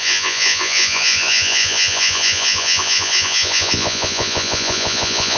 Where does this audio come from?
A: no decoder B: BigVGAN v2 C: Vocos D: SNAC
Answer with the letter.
C